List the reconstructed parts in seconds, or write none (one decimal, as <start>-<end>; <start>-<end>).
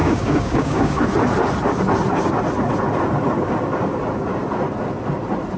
0.0-1.0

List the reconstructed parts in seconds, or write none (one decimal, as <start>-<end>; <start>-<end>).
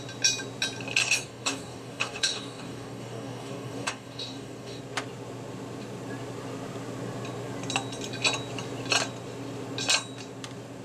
1.0-4.8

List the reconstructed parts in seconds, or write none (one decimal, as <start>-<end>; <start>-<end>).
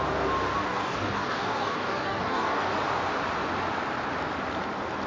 0.7-2.7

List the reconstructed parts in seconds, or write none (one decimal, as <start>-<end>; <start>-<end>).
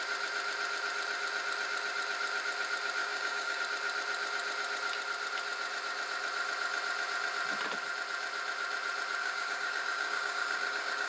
3.0-3.6; 9.2-11.1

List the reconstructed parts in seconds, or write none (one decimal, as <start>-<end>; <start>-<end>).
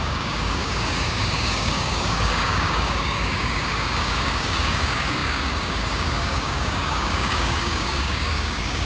0.0-8.8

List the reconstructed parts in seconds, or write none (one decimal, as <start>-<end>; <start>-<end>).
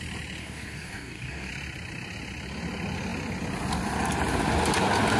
0.4-1.5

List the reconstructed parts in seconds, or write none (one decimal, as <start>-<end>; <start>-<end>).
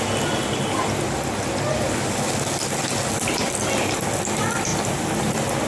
none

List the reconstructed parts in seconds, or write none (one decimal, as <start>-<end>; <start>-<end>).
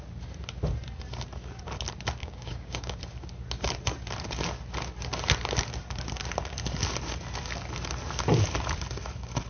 2.2-3.0